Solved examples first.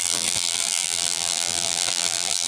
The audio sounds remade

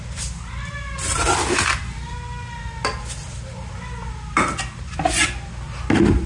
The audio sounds recorded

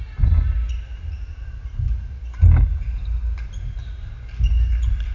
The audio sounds recorded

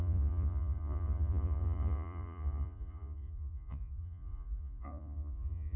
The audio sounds remade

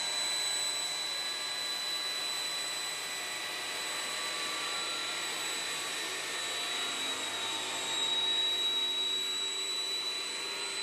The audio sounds remade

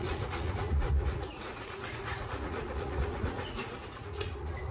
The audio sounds remade